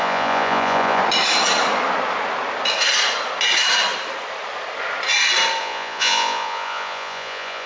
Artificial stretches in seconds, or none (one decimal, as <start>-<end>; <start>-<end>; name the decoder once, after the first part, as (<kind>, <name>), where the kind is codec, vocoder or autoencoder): 0.0-1.0 (vocoder, Vocos); 5.6-7.7